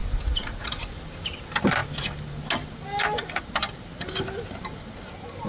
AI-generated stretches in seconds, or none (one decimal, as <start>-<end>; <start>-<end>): 0.0-1.0